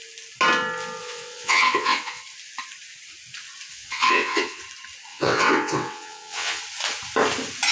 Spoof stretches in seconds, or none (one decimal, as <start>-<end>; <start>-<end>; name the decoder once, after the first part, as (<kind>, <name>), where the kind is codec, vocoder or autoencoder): 1.0-2.2 (vocoder, WaveNeXt); 3.7-4.6; 5.1-6.6